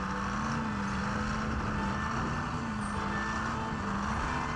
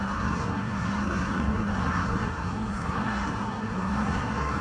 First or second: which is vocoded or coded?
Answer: second